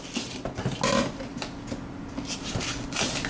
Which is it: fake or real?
real